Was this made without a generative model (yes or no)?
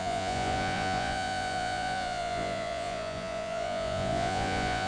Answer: no